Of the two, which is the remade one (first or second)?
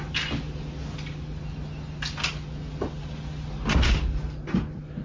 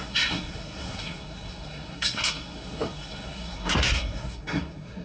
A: second